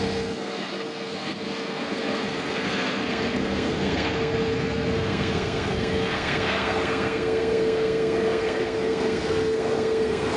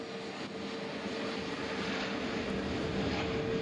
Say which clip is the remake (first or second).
first